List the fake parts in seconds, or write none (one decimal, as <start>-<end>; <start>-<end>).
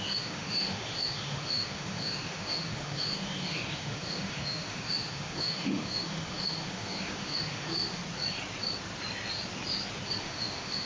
0.0-8.0; 10.2-10.9